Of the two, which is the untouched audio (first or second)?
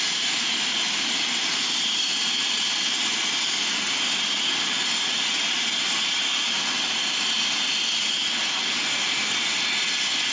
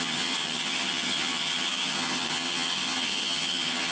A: first